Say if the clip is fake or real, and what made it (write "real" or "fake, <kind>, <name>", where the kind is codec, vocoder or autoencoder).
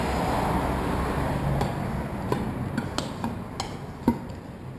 real